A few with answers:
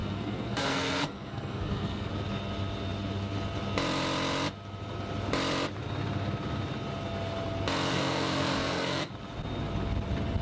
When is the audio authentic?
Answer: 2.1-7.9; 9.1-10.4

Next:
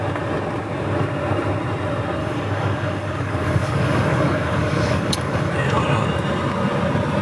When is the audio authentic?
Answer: 0.0-2.2; 5.5-7.2

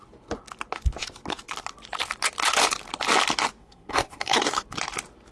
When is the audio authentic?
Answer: 0.0-3.6; 4.6-5.3

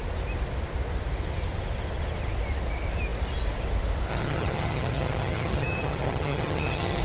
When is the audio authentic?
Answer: 0.0-4.1

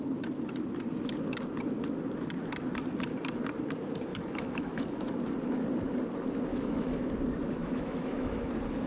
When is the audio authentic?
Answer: 0.0-4.1; 5.1-6.5; 7.0-7.6; 8.5-8.9

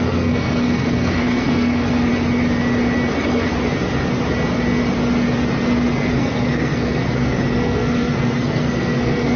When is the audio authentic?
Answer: 2.1-3.1; 3.5-6.1

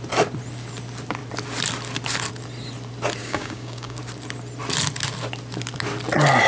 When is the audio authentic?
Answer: 0.0-3.2; 4.0-6.5

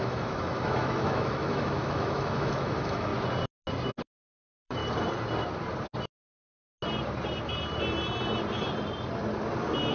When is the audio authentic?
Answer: 3.1-4.0; 4.8-9.9